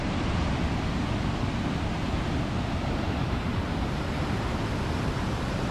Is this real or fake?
real